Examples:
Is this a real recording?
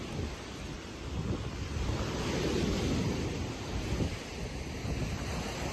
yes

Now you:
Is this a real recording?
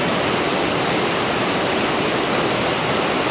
yes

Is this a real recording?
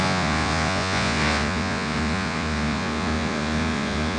no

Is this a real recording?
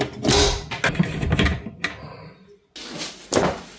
yes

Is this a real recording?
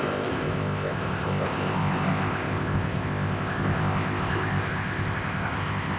no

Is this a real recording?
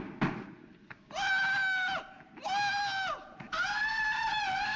yes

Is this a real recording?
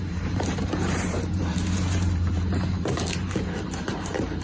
no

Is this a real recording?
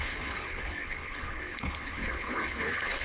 no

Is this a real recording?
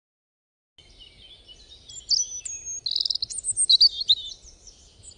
yes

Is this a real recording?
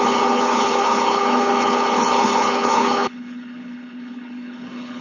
no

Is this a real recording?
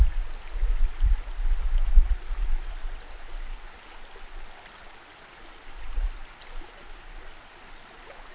yes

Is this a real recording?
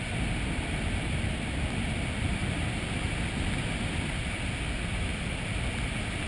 yes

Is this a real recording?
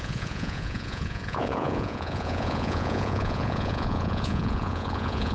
no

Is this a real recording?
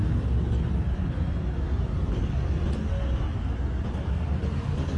yes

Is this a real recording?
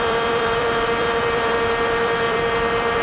no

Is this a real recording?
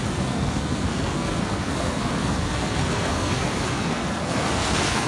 no